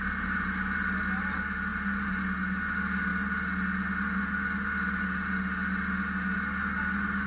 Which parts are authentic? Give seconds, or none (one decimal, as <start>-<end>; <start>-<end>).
0.0-7.3